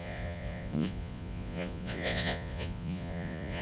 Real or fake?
fake